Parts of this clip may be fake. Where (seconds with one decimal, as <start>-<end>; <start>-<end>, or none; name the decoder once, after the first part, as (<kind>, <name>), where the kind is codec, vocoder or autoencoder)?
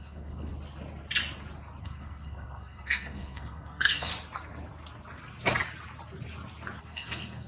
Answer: 0.0-0.5 (codec, SNAC); 1.8-4.1; 6.8-7.5